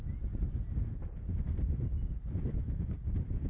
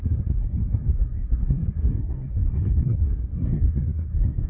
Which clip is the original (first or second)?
first